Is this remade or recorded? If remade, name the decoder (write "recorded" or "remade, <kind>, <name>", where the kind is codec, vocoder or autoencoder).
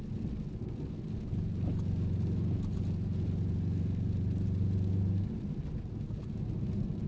recorded